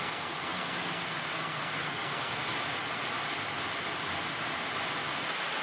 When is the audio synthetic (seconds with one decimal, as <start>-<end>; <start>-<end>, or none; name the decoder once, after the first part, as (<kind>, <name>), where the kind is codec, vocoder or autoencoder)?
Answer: 0.0-2.4 (codec, SNAC)